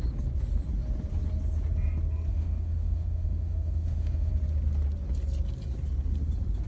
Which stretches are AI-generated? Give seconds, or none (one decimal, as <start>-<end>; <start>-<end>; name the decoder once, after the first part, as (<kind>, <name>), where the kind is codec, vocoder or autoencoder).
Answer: 2.3-4.3 (autoencoder, DAC-VAE)